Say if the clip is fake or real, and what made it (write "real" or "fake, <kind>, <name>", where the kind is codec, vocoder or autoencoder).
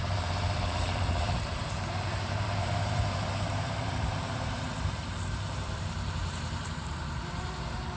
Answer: fake, vocoder, BigVGAN v2